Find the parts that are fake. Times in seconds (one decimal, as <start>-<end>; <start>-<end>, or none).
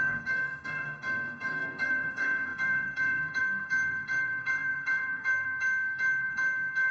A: 0.0-6.9